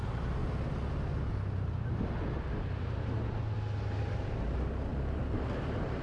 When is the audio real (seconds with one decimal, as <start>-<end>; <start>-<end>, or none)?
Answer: 0.4-4.0; 4.9-5.5

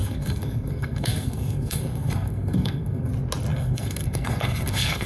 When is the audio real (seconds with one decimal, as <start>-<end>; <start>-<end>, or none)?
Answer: 3.1-3.5

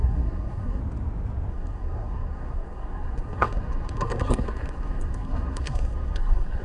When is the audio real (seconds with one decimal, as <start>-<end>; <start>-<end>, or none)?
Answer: 0.8-1.5

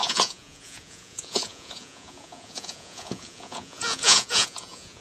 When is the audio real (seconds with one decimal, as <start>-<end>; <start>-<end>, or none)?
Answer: none

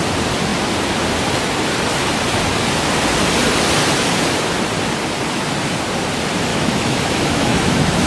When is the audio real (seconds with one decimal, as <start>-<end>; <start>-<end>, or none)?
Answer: 0.0-6.5